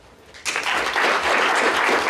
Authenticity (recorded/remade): recorded